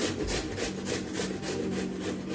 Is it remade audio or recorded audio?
recorded